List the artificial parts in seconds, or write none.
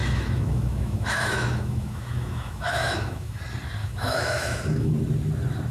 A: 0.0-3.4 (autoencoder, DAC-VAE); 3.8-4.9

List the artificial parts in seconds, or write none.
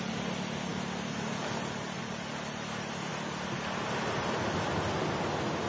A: none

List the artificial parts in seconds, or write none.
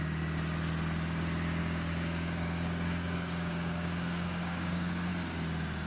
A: 1.6-5.1 (codec, DAC)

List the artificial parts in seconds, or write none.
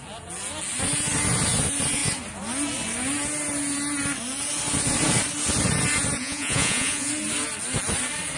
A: 6.2-7.1 (vocoder, Vocos)